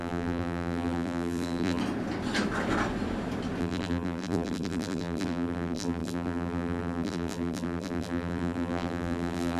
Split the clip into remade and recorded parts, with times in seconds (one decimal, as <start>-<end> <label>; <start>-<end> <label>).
0.0-1.8 remade; 1.8-3.6 recorded; 3.6-9.6 remade